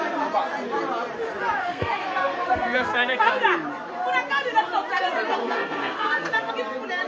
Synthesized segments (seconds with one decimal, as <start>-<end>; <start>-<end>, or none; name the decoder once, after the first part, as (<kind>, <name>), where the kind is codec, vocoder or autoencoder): 1.6-3.3 (codec, SNAC); 5.4-6.5